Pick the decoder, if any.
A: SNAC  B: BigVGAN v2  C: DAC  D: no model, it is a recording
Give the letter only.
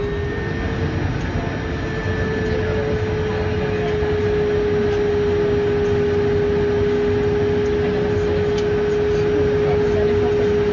D